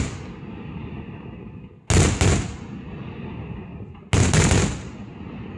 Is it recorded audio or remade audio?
recorded